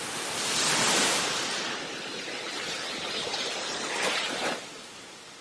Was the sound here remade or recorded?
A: recorded